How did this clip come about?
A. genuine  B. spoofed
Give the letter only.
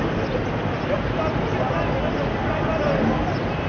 A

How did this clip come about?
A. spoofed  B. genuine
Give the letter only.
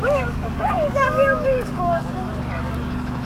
A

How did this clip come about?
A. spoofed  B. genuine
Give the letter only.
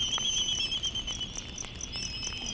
B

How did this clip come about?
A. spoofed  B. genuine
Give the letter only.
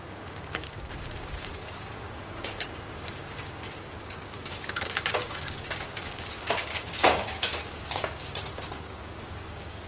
A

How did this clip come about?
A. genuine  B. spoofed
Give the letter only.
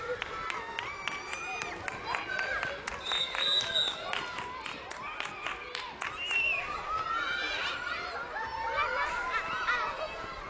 A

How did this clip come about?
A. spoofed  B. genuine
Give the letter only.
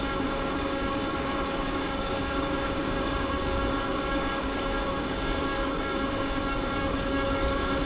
A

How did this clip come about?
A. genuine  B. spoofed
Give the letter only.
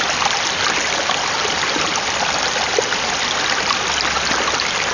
A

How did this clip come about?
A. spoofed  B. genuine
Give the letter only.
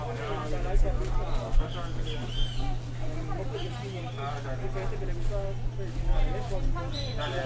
B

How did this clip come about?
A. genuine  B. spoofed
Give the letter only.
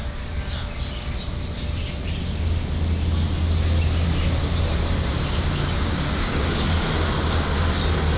A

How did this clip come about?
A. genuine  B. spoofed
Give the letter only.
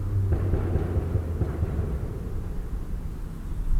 A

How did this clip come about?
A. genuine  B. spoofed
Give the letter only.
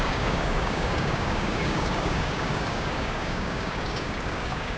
B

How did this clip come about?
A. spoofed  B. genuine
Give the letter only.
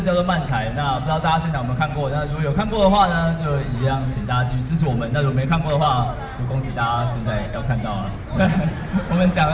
B